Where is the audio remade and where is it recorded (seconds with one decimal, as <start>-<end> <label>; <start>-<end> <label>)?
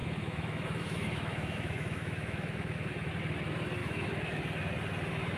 0.0-3.1 remade; 3.1-3.8 recorded; 3.8-4.4 remade; 4.4-5.4 recorded